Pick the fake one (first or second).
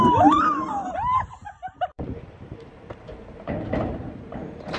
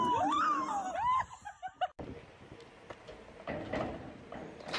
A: first